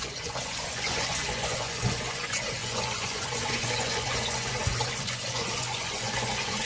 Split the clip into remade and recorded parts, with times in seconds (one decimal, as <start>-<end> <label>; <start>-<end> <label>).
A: 0.0-6.7 remade